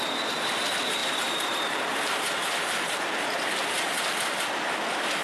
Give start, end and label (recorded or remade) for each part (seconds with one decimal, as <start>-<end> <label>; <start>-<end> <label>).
0.0-1.0 recorded; 1.0-4.1 remade; 4.1-5.2 recorded